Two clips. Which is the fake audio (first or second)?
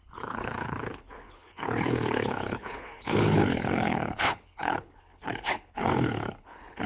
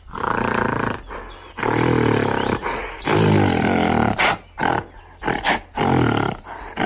first